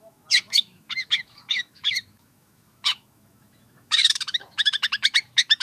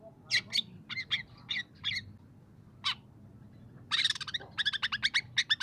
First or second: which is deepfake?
first